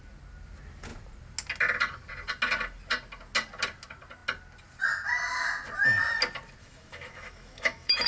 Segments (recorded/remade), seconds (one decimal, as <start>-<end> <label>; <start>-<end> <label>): 0.0-6.6 recorded; 6.6-8.1 remade

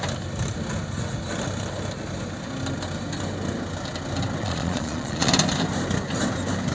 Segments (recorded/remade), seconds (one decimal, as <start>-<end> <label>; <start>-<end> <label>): 0.0-4.4 recorded; 4.4-5.3 remade; 5.3-6.7 recorded